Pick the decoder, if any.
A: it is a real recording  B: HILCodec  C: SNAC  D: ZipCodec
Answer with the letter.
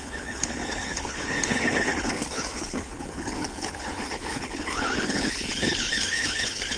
B